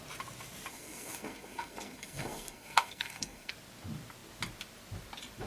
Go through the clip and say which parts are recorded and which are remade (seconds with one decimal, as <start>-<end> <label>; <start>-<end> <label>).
0.0-0.7 recorded; 0.7-3.5 remade; 3.5-5.5 recorded